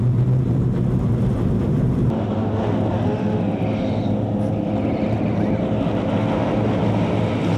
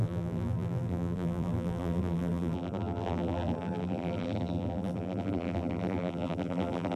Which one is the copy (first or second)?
second